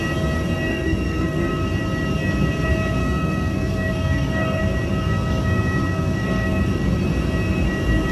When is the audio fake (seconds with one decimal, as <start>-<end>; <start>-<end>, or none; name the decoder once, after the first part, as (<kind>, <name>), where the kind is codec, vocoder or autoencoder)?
0.7-1.5 (codec, SNAC); 3.0-4.6; 5.0-6.6